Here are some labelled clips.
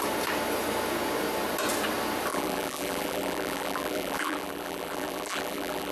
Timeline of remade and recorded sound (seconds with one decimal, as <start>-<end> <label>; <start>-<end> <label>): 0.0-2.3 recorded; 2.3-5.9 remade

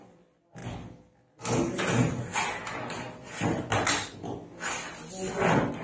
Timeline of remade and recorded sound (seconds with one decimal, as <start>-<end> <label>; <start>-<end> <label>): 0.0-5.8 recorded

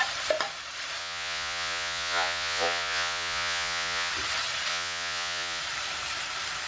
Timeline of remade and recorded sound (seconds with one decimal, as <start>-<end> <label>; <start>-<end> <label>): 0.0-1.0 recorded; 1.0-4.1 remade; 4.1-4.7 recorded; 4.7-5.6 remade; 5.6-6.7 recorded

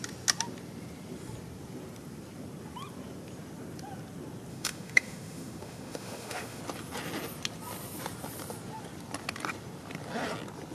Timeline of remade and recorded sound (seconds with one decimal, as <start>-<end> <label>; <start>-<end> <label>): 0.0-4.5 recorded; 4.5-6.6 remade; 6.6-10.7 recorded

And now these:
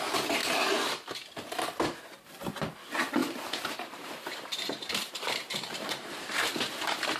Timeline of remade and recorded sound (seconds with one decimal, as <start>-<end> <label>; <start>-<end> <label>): 0.0-3.2 recorded; 3.2-6.5 remade; 6.5-7.2 recorded

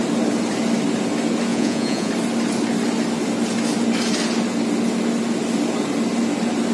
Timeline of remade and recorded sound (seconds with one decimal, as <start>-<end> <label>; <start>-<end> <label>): 0.0-1.5 recorded; 1.5-2.1 remade; 2.1-6.7 recorded